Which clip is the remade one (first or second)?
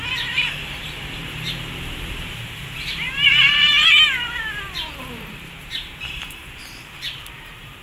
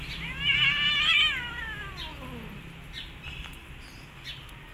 first